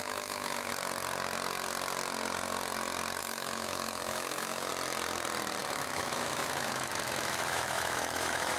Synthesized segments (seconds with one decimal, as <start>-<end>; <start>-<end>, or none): 0.0-0.7; 3.2-4.7; 5.6-8.6